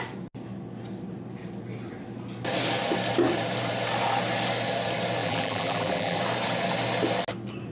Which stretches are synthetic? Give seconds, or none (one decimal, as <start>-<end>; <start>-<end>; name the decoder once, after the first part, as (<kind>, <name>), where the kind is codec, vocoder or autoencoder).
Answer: 5.2-6.2 (vocoder, BigVGAN v2)